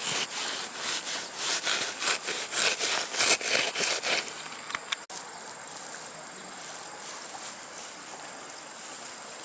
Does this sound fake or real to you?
real